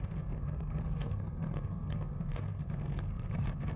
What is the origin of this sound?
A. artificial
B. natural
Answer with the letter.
A